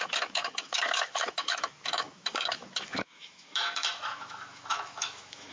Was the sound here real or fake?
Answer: fake